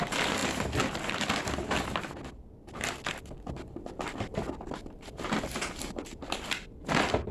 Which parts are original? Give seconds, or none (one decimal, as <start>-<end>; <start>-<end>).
0.0-7.3